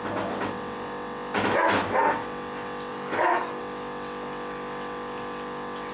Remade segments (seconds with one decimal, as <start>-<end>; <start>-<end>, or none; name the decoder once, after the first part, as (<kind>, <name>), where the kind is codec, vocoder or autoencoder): 2.9-3.6 (codec, DAC)